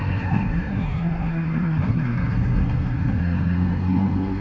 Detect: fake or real fake